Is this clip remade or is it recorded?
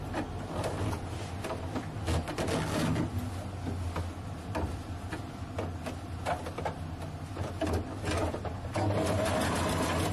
recorded